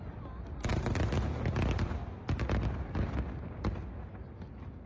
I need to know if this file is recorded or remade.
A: recorded